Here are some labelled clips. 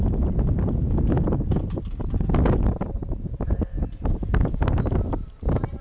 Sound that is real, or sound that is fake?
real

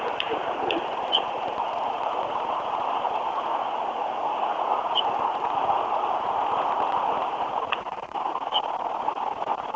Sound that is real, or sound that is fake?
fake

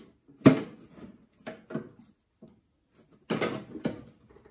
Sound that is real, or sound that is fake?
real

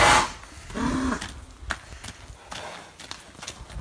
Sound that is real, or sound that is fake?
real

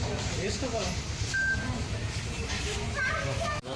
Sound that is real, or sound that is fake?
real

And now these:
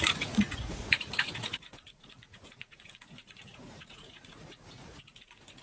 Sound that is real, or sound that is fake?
fake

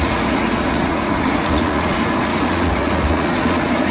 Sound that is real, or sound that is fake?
fake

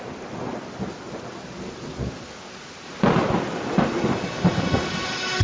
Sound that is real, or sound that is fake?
real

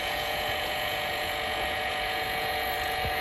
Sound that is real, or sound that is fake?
fake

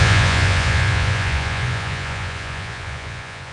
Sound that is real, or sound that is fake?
fake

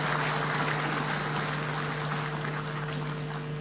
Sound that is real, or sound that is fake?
real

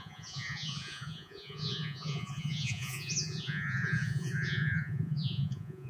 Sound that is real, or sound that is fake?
fake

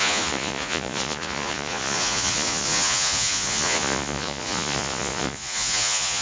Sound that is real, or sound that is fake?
fake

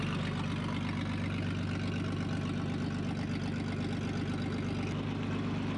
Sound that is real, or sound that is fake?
real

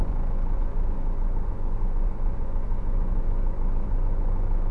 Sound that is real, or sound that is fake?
fake